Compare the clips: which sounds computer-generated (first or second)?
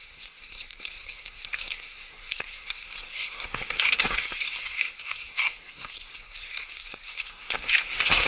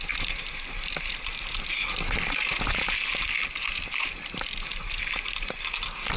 first